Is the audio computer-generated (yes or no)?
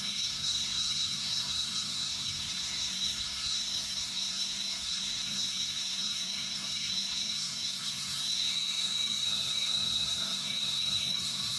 yes